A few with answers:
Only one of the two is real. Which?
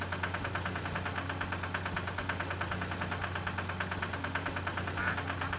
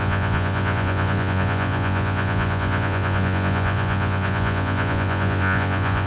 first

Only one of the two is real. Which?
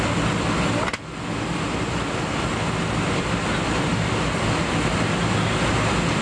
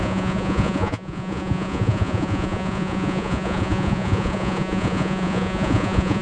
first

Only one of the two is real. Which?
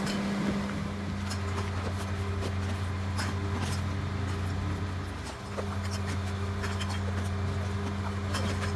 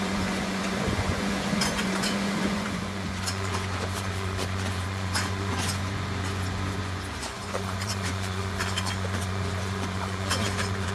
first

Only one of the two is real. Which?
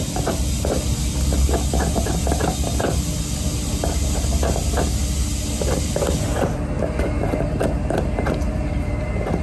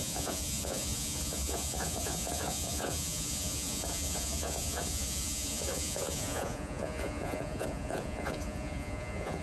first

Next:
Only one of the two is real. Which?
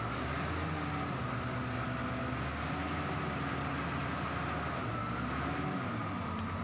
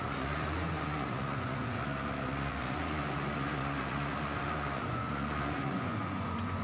first